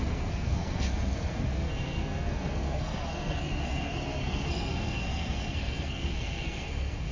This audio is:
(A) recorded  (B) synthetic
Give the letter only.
B